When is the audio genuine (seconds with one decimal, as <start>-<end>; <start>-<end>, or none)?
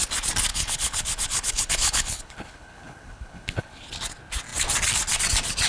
0.0-0.5; 3.9-5.7